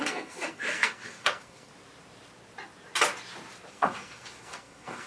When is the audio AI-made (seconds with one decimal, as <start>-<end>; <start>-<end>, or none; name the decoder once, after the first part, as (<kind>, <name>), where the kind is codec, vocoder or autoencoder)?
0.0-1.7 (codec, SNAC); 3.7-5.1